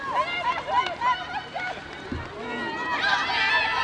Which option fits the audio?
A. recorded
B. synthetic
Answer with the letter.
A